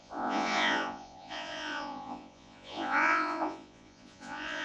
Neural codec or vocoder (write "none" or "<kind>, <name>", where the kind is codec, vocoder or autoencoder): vocoder, Vocos